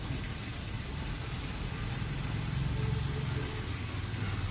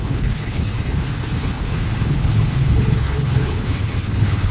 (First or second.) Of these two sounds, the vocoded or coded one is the second